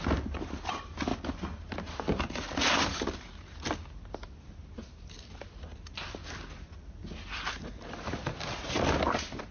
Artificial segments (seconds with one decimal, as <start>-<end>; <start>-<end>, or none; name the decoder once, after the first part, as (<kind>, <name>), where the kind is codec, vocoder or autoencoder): none